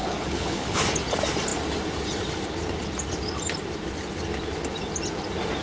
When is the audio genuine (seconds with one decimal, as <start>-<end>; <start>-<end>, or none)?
0.8-5.6